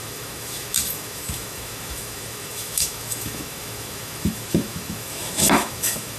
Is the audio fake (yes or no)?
yes